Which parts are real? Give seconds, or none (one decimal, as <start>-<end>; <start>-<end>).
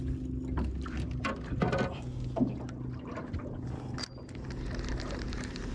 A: 0.0-5.7